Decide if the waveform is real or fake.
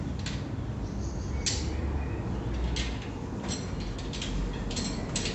real